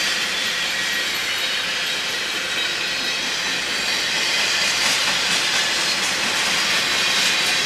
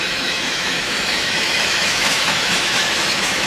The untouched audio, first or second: first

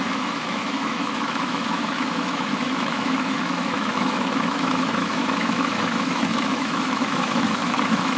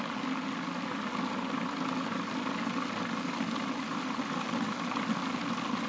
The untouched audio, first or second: second